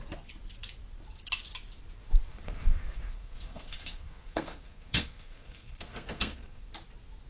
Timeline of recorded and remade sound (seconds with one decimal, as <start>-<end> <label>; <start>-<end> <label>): 0.0-2.3 recorded; 2.3-6.7 remade; 6.7-7.3 recorded